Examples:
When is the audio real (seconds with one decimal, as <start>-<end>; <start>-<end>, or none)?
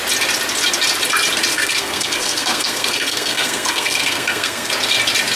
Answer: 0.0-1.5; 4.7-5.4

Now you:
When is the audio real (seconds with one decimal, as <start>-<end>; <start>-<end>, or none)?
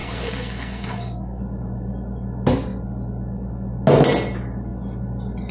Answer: 1.4-5.5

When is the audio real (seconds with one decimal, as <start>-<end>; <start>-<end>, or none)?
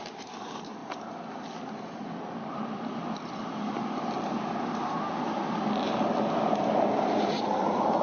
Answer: 0.0-8.0